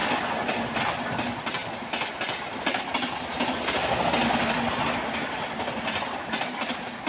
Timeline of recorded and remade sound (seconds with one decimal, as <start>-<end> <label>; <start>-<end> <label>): 0.0-7.1 recorded